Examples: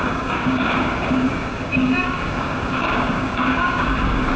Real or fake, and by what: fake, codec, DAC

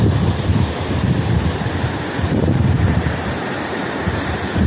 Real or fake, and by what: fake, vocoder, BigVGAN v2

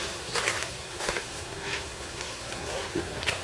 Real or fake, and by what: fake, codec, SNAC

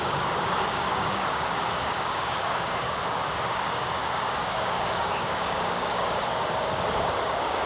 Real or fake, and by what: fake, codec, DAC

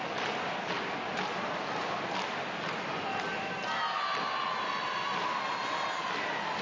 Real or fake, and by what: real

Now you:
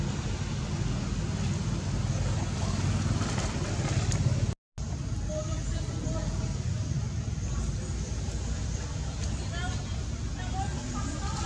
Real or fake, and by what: real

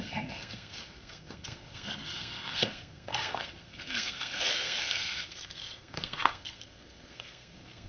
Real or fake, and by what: fake, codec, SNAC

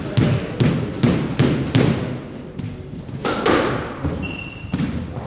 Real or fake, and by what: real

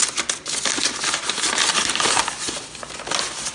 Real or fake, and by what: real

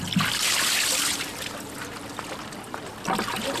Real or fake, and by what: real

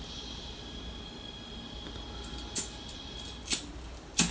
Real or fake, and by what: real